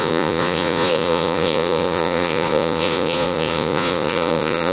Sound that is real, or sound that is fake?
fake